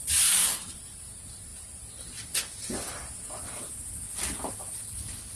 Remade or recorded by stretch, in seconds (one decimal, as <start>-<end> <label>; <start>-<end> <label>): 0.0-1.5 remade; 1.5-4.7 recorded; 4.7-5.4 remade

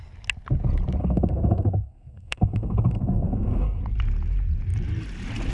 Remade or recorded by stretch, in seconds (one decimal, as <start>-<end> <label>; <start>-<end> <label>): 0.0-1.0 recorded; 1.0-3.8 remade; 3.8-5.5 recorded

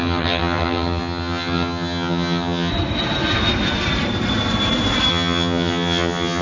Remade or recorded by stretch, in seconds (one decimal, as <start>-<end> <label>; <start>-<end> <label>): 0.0-2.7 remade; 2.7-5.1 recorded; 5.1-6.4 remade

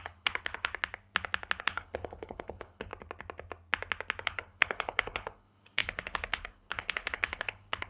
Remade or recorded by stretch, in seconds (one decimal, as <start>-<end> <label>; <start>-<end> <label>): 0.0-0.7 remade; 0.7-1.6 recorded; 1.6-2.9 remade; 2.9-4.2 recorded; 4.2-7.9 remade

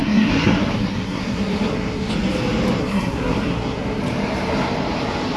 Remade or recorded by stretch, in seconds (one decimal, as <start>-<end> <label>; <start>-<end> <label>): 0.0-2.1 remade; 2.1-2.8 recorded; 2.8-4.0 remade; 4.0-5.4 recorded

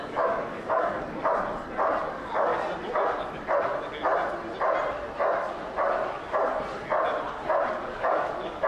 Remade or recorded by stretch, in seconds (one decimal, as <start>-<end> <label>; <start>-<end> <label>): 0.0-1.2 remade; 1.2-2.0 recorded; 2.0-2.5 remade; 2.5-7.7 recorded; 7.7-8.7 remade

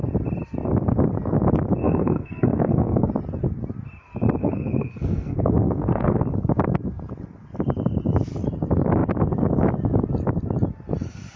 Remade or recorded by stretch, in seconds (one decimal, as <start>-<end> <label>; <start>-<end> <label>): 0.0-1.8 recorded; 1.8-3.1 remade; 3.1-4.4 recorded; 4.4-6.2 remade; 6.2-11.4 recorded

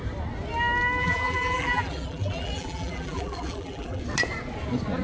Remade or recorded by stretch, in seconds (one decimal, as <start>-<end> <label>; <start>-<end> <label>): 0.0-1.0 recorded; 1.0-4.0 remade; 4.0-5.0 recorded